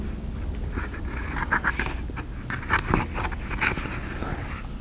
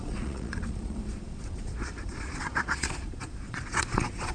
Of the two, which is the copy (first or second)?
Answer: second